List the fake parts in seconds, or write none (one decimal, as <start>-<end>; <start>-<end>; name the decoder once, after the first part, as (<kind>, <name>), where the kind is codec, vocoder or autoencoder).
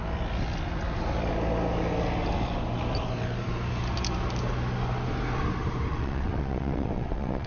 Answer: 5.9-7.5 (vocoder, WaveNeXt)